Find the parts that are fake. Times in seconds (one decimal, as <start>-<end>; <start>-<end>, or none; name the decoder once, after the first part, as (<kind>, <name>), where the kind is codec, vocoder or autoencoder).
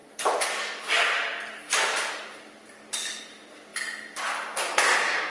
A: none